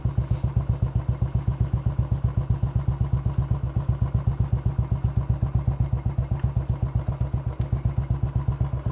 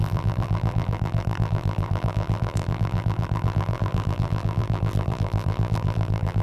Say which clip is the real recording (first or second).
first